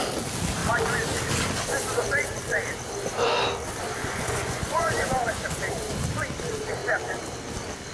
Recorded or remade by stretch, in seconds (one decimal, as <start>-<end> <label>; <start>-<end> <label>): 0.0-4.0 recorded; 4.0-5.8 remade; 5.8-7.9 recorded